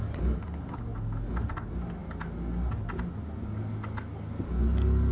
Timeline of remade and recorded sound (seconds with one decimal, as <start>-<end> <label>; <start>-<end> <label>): 0.0-5.1 recorded